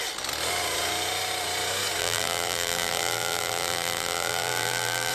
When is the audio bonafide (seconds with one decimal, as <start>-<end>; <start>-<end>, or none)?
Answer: 0.0-2.0